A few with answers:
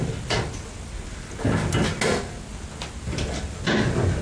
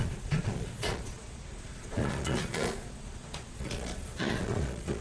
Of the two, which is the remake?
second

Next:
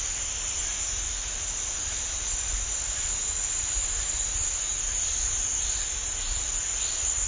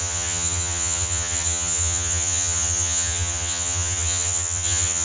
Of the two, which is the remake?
second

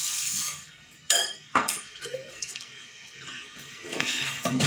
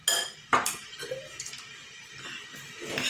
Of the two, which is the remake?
first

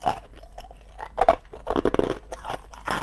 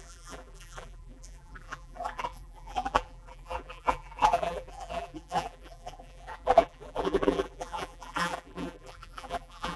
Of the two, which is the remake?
second